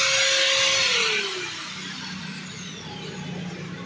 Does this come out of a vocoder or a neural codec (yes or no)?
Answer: no